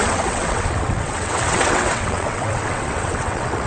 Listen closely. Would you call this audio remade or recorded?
remade